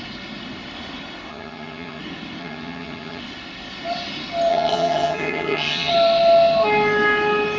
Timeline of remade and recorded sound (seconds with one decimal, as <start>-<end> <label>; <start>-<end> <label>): 0.0-1.3 recorded; 1.3-2.0 remade; 2.0-2.4 recorded; 2.4-3.2 remade; 3.2-4.5 recorded; 4.5-5.9 remade; 5.9-7.6 recorded